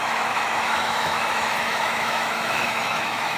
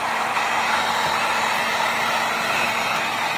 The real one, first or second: second